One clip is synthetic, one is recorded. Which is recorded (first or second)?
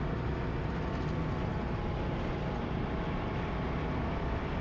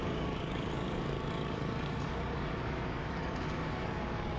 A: first